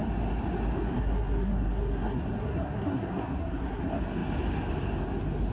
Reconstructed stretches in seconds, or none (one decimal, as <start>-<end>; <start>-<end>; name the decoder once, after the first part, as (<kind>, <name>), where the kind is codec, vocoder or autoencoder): 0.9-3.8 (codec, SNAC)